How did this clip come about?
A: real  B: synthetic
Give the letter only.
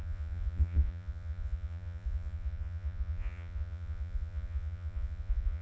B